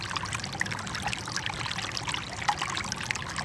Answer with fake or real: real